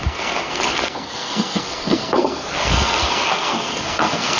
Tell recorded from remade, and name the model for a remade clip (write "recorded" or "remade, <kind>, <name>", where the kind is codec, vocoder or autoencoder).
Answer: remade, codec, SNAC